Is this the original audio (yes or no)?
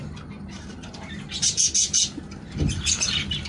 yes